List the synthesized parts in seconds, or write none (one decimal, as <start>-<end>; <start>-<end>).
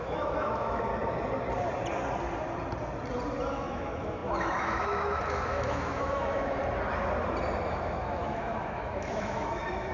0.0-0.9; 3.5-6.6; 7.7-9.9